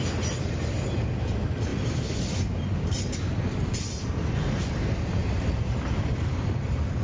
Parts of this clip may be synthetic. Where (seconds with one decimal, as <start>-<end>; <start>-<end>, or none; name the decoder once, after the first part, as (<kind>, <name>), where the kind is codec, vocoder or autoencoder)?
none